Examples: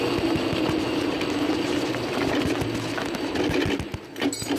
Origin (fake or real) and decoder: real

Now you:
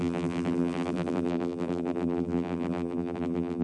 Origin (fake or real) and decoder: fake, vocoder, BigVGAN v2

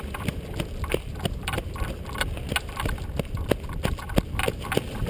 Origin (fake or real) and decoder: real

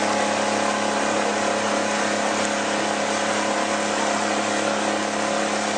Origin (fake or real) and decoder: real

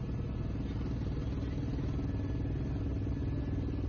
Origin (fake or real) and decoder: real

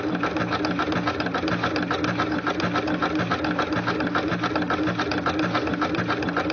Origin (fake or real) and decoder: real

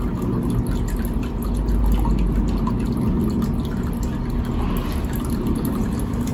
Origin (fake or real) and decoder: real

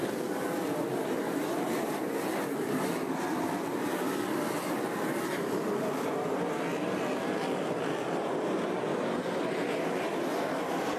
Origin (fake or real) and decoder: fake, vocoder, BigVGAN v2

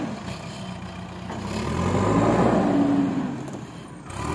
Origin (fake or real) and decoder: real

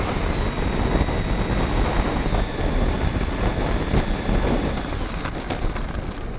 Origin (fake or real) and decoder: real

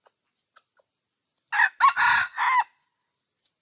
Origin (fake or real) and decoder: real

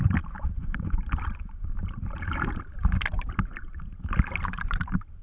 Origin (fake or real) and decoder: real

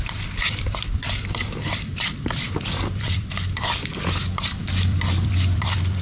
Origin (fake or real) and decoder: fake, vocoder, BigVGAN v2